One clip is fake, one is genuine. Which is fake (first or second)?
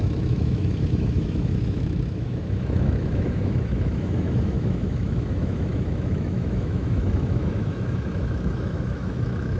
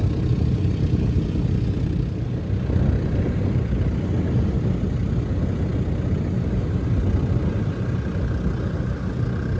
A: first